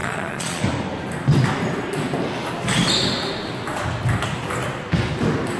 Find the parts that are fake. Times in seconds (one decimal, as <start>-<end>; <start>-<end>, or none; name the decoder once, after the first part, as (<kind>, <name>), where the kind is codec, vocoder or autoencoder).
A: 0.0-0.6 (vocoder, Vocos)